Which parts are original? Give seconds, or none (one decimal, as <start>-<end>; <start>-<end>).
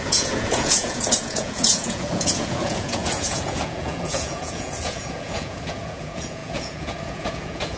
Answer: none